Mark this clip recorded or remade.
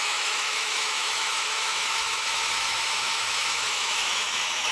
remade